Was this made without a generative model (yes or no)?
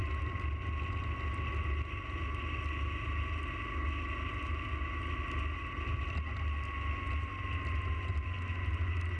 yes